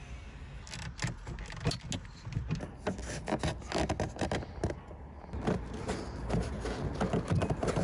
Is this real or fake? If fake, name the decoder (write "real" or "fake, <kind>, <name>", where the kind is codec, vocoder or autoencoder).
real